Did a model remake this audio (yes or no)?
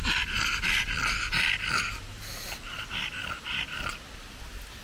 no